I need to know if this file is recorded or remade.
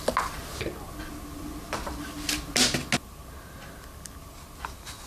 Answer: recorded